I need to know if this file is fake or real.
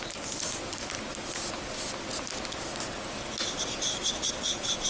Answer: real